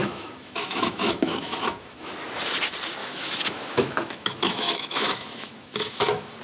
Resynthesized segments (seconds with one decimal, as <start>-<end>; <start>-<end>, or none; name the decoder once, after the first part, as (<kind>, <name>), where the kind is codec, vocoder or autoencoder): 0.0-2.1 (autoencoder, DAC-VAE); 3.0-6.4